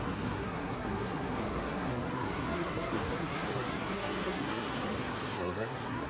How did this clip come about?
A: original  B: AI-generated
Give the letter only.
B